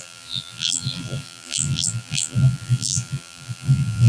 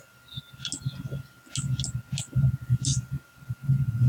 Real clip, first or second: second